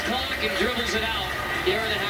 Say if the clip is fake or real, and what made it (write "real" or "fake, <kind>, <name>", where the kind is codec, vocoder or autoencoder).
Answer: real